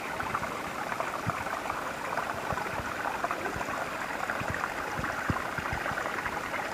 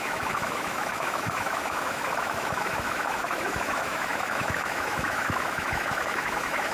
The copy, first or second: second